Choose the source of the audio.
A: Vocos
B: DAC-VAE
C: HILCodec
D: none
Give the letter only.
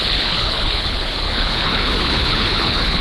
C